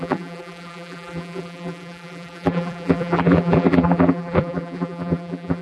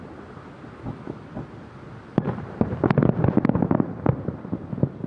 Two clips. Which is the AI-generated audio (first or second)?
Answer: first